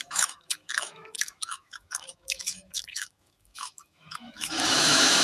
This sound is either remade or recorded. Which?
remade